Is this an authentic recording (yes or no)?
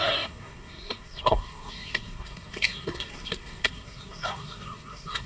no